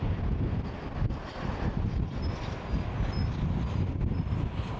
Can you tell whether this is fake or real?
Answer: real